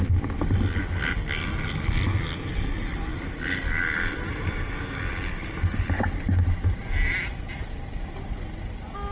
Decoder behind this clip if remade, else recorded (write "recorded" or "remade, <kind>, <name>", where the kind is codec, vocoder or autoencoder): recorded